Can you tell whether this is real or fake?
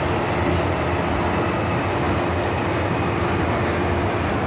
real